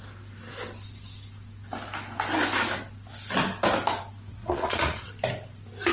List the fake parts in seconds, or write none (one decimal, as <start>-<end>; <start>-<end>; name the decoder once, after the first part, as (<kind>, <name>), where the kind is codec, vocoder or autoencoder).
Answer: 4.4-5.1 (vocoder, Vocos)